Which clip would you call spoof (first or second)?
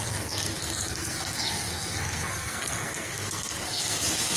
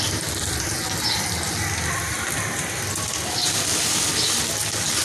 first